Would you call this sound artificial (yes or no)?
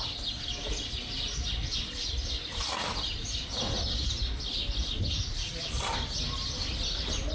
no